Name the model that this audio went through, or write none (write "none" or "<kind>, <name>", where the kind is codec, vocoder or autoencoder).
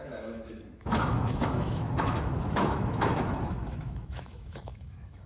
autoencoder, DAC-VAE